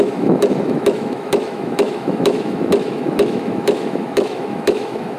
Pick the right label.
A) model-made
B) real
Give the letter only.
A